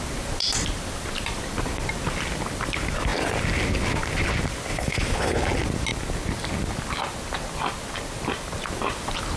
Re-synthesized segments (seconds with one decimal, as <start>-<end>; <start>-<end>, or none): 4.7-5.5